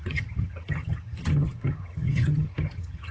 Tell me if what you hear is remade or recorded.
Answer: remade